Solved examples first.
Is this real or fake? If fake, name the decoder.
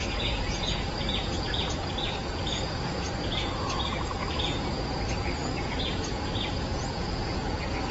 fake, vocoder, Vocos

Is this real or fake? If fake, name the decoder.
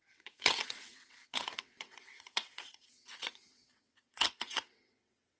fake, vocoder, WaveNeXt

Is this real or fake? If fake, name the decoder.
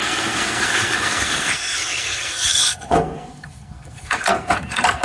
fake, codec, SNAC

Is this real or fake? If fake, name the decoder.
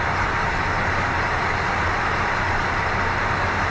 fake, vocoder, BigVGAN v2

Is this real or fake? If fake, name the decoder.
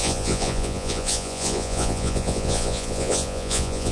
fake, vocoder, Vocos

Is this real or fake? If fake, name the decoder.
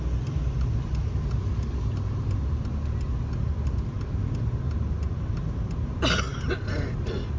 real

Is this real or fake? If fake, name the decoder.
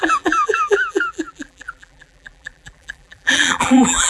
fake, vocoder, BigVGAN v2